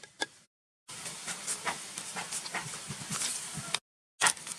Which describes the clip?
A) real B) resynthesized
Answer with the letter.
A